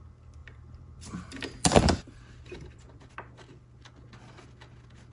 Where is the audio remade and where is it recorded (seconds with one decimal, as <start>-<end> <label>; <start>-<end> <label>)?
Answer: 0.0-0.4 recorded; 0.4-3.1 remade; 3.1-5.1 recorded